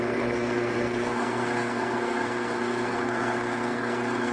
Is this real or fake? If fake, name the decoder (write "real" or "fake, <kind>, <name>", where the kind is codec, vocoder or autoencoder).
fake, codec, SNAC